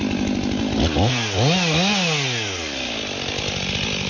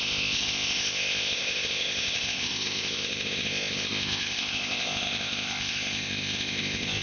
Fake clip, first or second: second